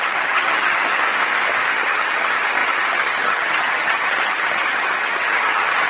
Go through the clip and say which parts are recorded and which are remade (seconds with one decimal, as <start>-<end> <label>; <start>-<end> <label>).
0.0-1.0 remade; 1.0-1.7 recorded; 1.7-5.9 remade